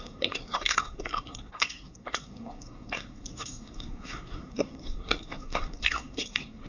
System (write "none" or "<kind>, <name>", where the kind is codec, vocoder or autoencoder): codec, SNAC